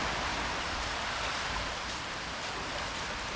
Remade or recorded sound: recorded